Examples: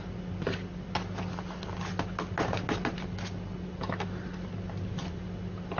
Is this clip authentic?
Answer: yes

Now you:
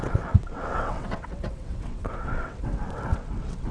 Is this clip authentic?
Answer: no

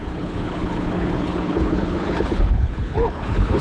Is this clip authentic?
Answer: no